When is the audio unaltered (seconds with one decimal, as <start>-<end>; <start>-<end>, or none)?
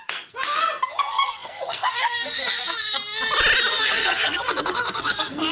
3.0-3.7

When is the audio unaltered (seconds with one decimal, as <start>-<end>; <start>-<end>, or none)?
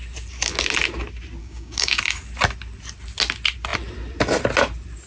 0.0-1.4; 2.0-5.1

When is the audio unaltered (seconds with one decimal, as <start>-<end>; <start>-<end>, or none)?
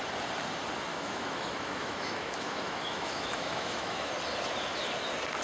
0.0-0.9; 4.1-5.4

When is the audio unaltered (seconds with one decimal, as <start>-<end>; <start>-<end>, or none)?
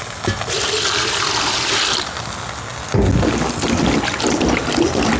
0.0-5.2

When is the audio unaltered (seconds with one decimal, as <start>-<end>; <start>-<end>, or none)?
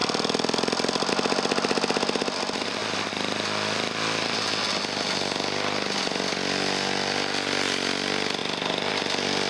0.0-9.5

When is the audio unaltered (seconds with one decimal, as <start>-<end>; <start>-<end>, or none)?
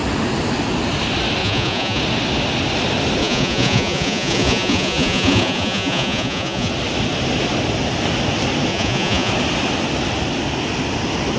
0.0-1.4; 2.0-3.2; 6.7-8.7; 9.3-11.4